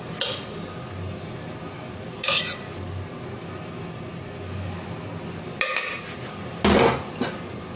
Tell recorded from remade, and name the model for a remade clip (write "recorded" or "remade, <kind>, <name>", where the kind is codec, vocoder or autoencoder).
recorded